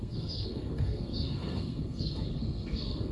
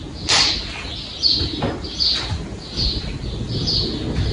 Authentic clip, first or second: second